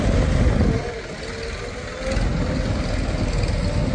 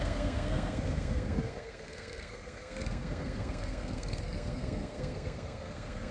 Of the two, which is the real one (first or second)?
first